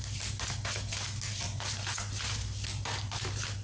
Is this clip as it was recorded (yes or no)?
yes